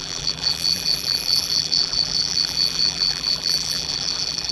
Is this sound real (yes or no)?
no